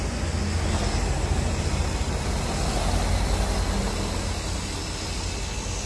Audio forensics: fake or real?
real